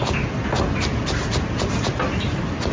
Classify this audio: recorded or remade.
recorded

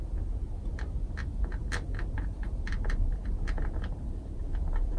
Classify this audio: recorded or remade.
recorded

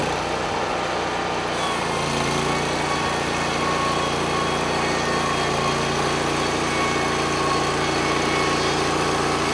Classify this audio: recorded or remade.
recorded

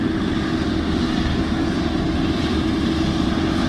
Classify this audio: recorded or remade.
recorded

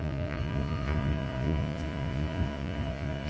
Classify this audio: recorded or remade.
remade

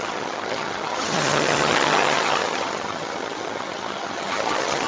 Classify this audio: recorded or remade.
remade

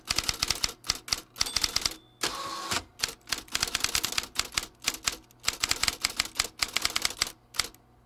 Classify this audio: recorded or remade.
recorded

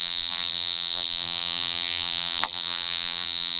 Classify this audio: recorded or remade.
remade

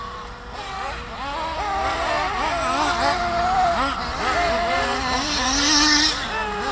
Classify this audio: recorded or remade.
recorded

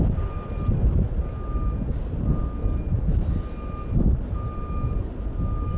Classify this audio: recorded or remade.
recorded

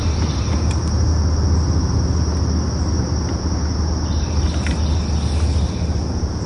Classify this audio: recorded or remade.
recorded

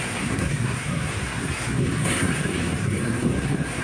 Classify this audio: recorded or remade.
remade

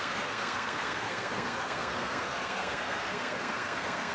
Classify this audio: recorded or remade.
remade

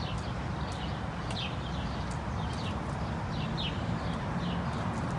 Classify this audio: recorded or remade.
recorded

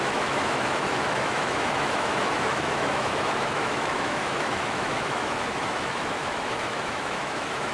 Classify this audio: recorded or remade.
remade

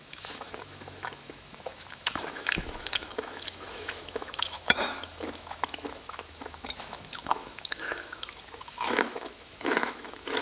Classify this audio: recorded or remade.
remade